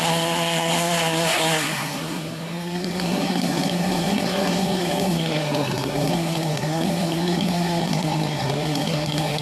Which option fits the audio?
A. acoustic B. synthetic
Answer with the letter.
B